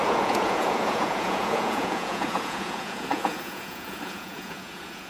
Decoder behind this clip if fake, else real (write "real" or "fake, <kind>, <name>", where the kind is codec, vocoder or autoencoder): fake, vocoder, Vocos